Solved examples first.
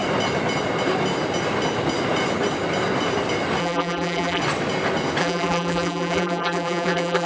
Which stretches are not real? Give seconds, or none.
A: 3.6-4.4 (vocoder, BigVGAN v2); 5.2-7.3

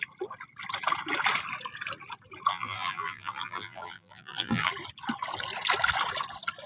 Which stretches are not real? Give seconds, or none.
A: 2.5-4.7 (vocoder, BigVGAN v2)

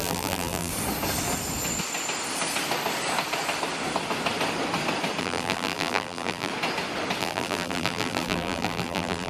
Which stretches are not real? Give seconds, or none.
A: 0.0-0.7 (vocoder, BigVGAN v2); 5.2-6.5; 7.2-9.3

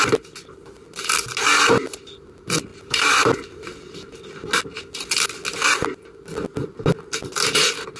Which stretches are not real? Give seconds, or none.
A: none

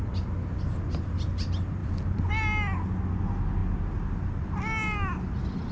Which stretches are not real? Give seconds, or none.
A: 1.8-2.3 (vocoder, BigVGAN v2)